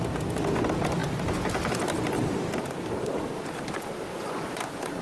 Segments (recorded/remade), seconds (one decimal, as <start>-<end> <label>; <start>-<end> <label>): 0.0-4.1 recorded; 4.1-4.6 remade; 4.6-5.0 recorded